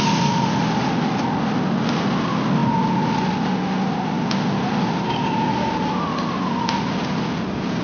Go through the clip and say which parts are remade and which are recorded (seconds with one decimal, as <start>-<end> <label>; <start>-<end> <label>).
0.0-7.8 recorded